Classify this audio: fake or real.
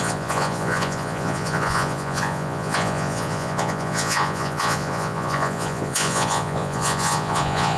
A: fake